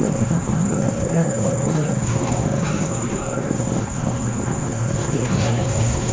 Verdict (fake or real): fake